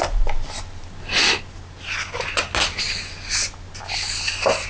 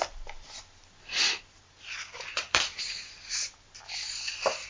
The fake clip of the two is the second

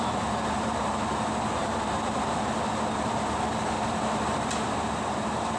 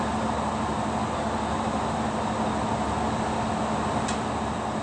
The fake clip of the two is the first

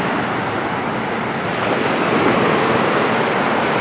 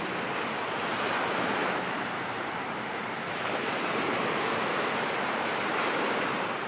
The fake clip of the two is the second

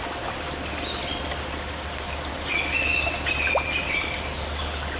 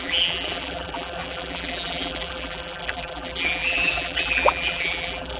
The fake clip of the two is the second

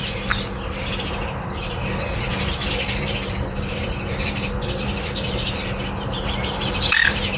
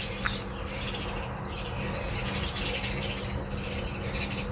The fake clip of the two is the first